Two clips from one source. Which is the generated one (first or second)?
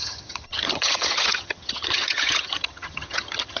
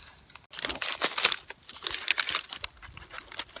first